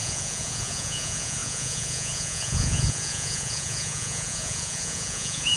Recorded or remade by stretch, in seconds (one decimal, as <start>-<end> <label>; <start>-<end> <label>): 0.0-5.6 remade